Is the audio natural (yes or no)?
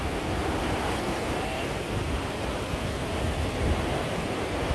yes